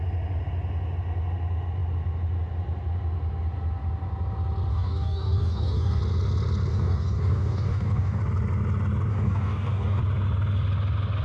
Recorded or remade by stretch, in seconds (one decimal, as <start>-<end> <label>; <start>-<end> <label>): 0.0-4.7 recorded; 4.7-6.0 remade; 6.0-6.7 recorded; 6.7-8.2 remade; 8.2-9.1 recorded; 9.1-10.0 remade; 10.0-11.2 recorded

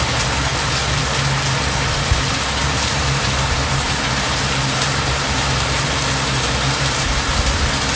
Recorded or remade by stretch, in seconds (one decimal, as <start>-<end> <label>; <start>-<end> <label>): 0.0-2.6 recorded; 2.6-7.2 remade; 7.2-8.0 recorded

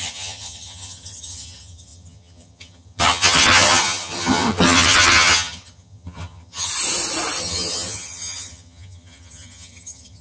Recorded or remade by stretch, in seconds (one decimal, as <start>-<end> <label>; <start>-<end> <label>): 0.0-6.7 remade; 6.7-7.4 recorded; 7.4-10.2 remade

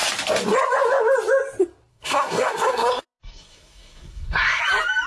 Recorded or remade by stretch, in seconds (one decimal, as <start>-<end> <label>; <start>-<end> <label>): 0.0-1.9 recorded; 1.9-4.6 remade; 4.6-5.1 recorded

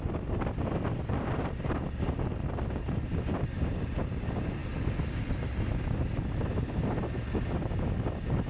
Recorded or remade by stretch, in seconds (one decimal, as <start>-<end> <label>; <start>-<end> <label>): 0.0-8.5 recorded